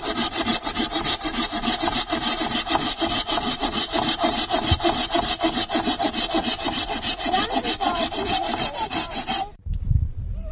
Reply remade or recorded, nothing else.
remade